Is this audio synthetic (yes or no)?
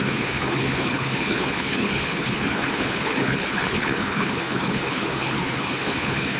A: yes